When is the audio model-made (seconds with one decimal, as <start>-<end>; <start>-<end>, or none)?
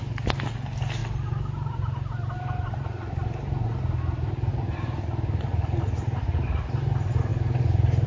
none